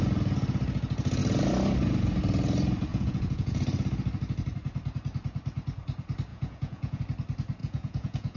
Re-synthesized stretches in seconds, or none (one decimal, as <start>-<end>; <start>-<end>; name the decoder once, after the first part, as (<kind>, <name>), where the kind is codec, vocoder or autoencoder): 2.9-3.6 (vocoder, Vocos); 6.3-7.0; 7.6-8.4